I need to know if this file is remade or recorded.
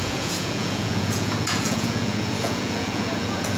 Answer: remade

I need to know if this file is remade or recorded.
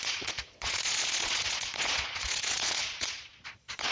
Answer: remade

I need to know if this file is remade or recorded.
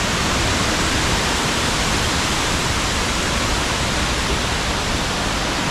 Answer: recorded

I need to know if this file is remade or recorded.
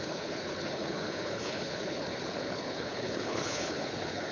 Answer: remade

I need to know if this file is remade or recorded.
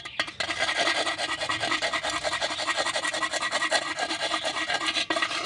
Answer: recorded